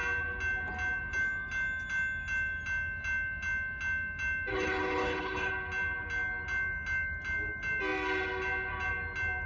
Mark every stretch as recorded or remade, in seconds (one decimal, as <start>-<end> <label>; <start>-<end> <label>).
0.0-4.5 recorded; 4.5-5.5 remade; 5.5-9.5 recorded

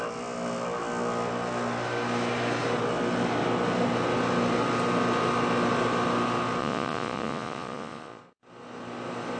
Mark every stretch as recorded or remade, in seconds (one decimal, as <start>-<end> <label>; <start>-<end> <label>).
0.0-6.6 recorded; 6.6-8.2 remade; 8.2-9.4 recorded

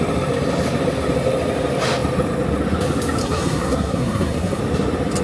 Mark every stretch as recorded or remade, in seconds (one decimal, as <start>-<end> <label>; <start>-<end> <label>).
0.0-3.2 recorded; 3.2-4.6 remade; 4.6-5.2 recorded

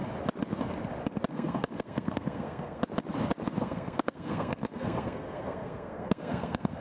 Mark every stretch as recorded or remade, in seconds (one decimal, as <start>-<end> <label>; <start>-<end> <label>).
0.0-1.3 recorded; 1.3-2.8 remade; 2.8-3.6 recorded; 3.6-6.8 remade

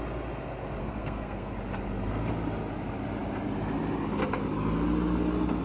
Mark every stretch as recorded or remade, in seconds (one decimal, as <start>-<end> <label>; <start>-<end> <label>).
0.0-0.8 recorded; 0.8-1.5 remade; 1.5-5.6 recorded